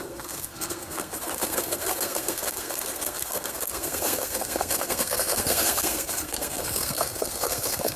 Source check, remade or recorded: remade